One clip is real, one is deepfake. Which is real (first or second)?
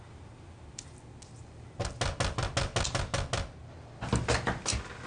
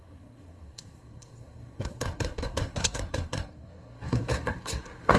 first